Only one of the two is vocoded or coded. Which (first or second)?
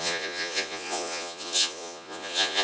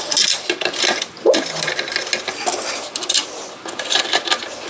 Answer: first